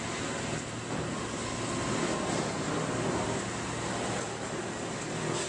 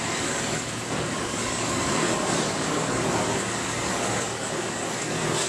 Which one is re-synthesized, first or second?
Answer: second